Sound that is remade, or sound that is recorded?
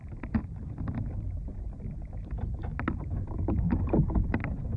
recorded